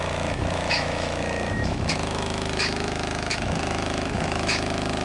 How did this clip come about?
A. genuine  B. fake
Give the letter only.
B